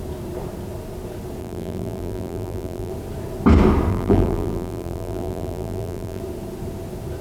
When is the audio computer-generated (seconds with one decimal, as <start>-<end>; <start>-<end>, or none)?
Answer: 1.4-2.9; 3.9-6.2